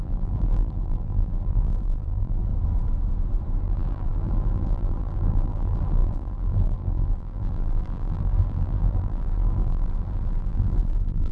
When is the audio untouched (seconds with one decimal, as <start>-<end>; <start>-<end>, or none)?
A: 2.5-3.6